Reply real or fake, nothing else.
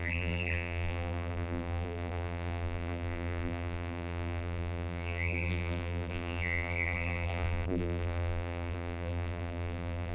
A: fake